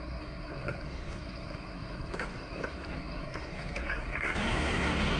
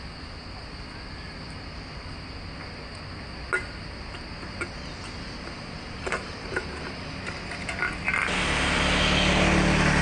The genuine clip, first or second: second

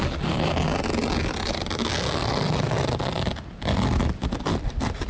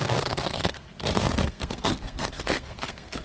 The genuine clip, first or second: first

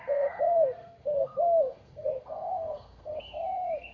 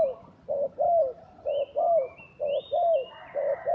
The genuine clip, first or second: second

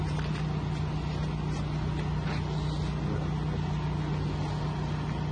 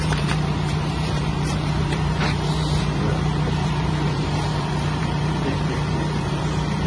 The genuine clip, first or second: first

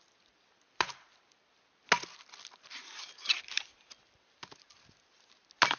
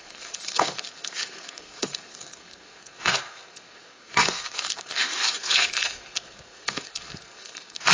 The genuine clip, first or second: first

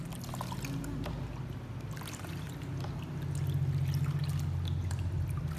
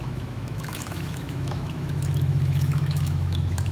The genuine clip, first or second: first